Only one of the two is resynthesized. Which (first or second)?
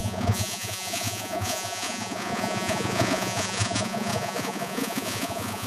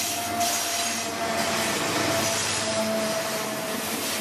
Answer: first